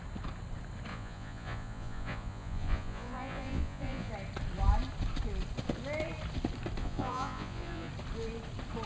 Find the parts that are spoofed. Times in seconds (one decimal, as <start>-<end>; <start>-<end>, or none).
0.9-4.1; 6.8-7.9